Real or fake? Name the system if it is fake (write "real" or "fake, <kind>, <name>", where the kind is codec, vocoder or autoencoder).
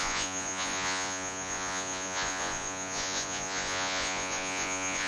fake, vocoder, Vocos